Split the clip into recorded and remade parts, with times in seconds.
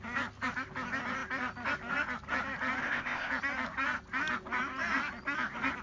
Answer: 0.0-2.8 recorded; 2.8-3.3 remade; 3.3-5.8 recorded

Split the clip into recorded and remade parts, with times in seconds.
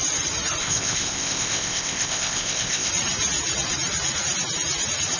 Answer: 0.0-0.6 recorded; 0.6-2.9 remade; 2.9-5.2 recorded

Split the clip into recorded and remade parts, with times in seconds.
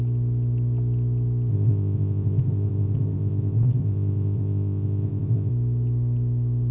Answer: 0.0-1.5 recorded; 1.5-5.5 remade; 5.5-6.7 recorded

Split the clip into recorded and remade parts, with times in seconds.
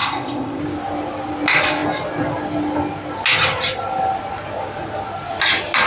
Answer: 0.0-0.6 remade; 0.6-5.9 recorded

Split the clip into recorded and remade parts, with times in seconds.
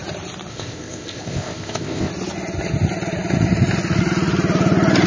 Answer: 0.0-0.5 recorded; 0.5-2.1 remade; 2.1-5.1 recorded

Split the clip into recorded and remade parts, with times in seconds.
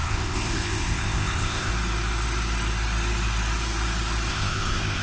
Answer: 0.0-1.7 remade; 1.7-4.3 recorded; 4.3-5.0 remade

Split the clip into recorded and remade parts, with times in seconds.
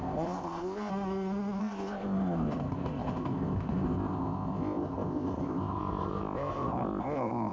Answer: 0.0-0.9 remade; 0.9-1.6 recorded; 1.6-7.5 remade